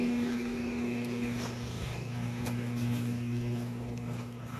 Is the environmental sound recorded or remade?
remade